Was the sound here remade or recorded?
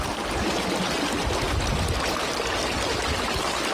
recorded